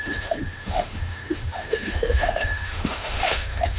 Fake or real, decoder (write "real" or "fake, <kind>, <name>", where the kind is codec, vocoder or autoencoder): fake, autoencoder, DAC-VAE